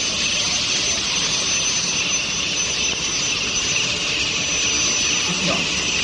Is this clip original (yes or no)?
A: yes